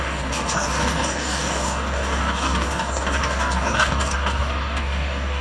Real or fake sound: fake